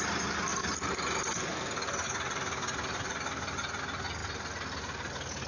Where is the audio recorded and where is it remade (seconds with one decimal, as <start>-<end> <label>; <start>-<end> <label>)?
0.0-5.5 recorded